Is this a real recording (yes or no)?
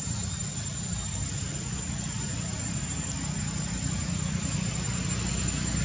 yes